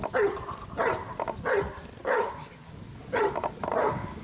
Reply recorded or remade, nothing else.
recorded